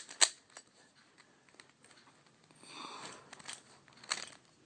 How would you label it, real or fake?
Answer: real